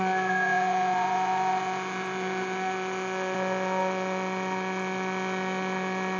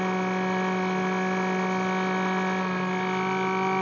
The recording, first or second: second